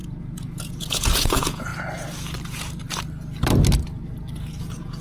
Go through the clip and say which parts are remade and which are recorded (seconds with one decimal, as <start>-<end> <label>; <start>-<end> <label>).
0.0-1.7 remade; 1.7-4.6 recorded; 4.6-5.0 remade